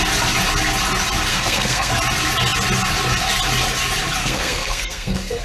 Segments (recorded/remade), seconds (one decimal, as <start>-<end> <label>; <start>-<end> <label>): 0.0-1.3 recorded; 1.3-1.9 remade; 1.9-4.2 recorded; 4.2-5.4 remade